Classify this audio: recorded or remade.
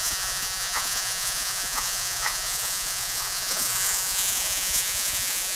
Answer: remade